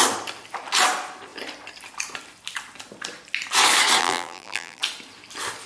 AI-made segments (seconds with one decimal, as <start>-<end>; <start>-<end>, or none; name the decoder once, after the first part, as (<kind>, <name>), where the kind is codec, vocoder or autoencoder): 4.0-4.8 (vocoder, BigVGAN v2)